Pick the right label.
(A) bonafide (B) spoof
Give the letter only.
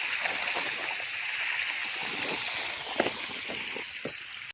A